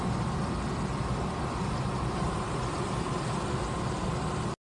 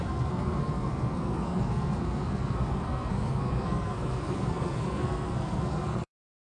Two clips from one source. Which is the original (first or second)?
first